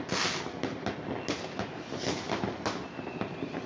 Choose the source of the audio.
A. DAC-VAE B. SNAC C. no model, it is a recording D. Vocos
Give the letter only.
C